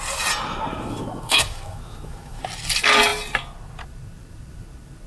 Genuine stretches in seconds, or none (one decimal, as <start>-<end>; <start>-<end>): 0.0-0.7; 2.4-5.1